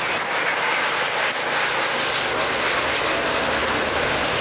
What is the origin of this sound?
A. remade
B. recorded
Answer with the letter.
B